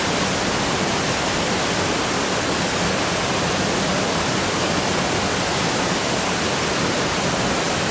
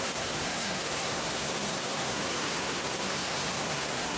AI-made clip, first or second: second